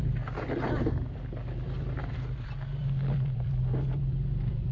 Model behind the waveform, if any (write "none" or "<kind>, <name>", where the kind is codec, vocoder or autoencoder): vocoder, BigVGAN v2